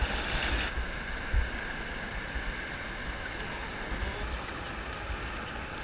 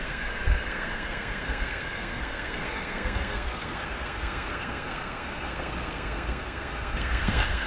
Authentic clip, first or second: first